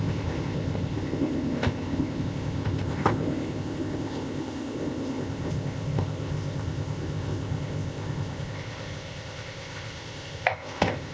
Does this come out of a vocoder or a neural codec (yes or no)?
yes